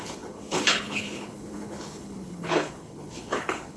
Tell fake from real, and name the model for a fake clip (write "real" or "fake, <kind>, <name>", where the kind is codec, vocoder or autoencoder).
fake, codec, HILCodec